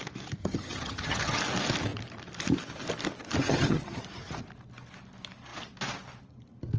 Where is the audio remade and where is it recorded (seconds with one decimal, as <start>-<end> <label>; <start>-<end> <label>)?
0.0-0.4 recorded; 0.4-1.4 remade; 1.4-3.4 recorded; 3.4-4.0 remade; 4.0-6.8 recorded